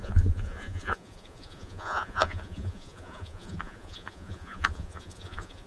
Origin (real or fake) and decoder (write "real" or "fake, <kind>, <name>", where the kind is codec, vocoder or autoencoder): fake, vocoder, Vocos